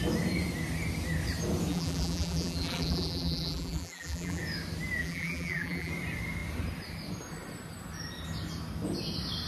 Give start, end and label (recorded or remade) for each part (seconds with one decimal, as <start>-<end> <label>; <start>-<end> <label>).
0.0-1.7 recorded; 1.7-4.4 remade; 4.4-5.0 recorded; 5.0-5.9 remade; 5.9-9.5 recorded